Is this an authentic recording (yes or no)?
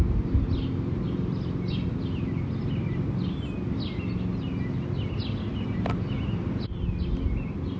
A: yes